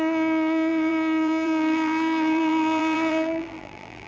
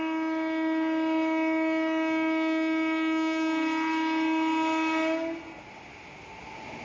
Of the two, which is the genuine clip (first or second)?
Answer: second